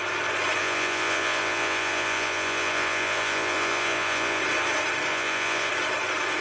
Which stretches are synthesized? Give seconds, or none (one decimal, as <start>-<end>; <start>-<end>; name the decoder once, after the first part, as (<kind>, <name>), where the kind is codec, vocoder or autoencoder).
0.6-4.4 (vocoder, Vocos); 5.1-5.7